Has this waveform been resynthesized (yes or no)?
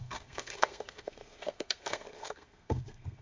yes